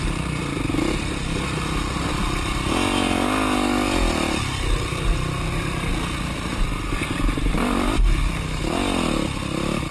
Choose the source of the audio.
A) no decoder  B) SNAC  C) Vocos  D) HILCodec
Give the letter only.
A